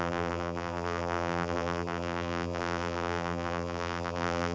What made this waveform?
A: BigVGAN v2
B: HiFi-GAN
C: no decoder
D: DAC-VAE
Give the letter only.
A